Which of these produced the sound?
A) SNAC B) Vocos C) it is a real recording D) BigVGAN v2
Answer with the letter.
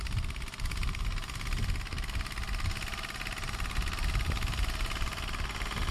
C